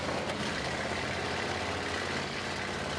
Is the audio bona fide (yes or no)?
yes